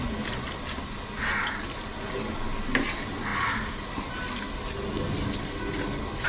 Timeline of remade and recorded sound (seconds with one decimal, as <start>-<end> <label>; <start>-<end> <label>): 0.0-6.3 recorded

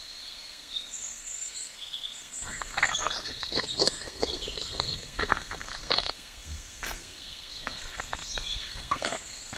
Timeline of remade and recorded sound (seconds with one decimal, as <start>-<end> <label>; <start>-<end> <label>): 0.0-9.6 remade

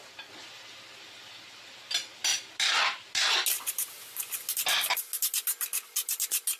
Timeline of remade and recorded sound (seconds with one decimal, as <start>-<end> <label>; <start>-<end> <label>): 0.0-6.6 recorded

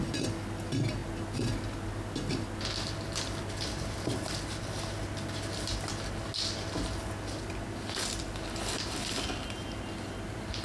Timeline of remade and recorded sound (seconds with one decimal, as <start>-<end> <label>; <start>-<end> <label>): 0.0-10.6 recorded

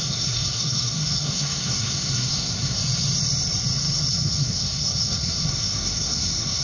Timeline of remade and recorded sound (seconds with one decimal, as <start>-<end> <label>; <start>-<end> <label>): 0.0-2.8 remade; 2.8-4.1 recorded; 4.1-6.6 remade

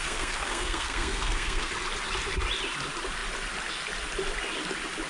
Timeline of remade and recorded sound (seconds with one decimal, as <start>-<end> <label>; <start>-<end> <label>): 0.0-1.7 remade; 1.7-5.1 recorded